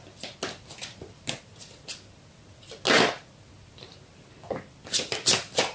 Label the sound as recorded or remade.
recorded